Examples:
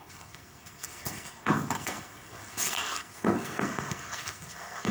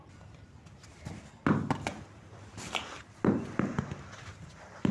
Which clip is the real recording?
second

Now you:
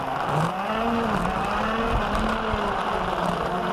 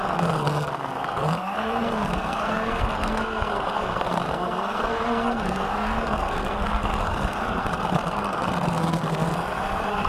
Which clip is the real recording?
first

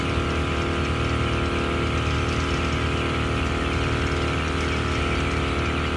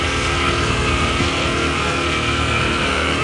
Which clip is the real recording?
first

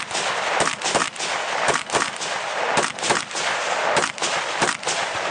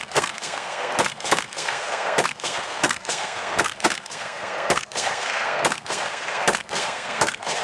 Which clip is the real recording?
first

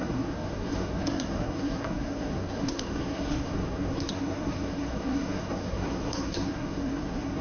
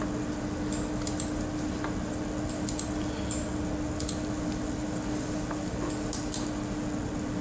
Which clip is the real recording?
second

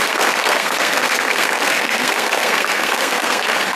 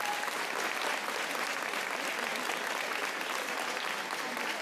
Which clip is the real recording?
second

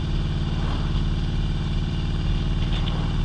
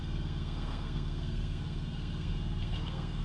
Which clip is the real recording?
first